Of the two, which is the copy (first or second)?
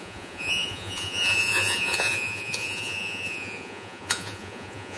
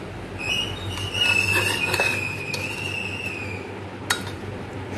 first